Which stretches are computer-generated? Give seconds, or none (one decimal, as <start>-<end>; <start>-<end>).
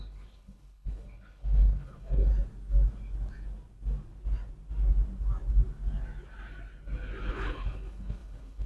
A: 0.0-2.3; 7.3-8.7